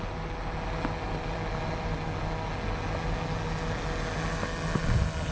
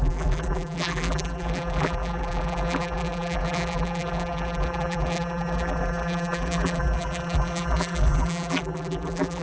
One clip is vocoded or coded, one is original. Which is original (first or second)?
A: first